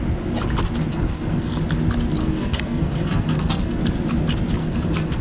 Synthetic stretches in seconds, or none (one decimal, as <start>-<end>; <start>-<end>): 0.9-1.6; 2.2-3.8; 4.6-5.2